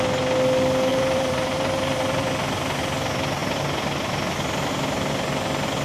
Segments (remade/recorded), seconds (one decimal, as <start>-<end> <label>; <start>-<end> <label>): 0.0-0.9 recorded; 0.9-2.3 remade; 2.3-5.8 recorded